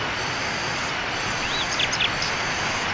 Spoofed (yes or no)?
no